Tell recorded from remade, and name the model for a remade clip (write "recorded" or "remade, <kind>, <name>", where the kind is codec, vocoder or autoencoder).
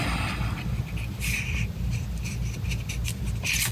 recorded